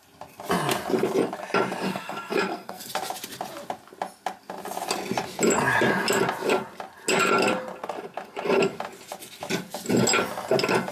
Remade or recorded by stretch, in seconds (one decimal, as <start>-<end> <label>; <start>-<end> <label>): 0.0-1.9 recorded; 1.9-2.9 remade; 2.9-10.9 recorded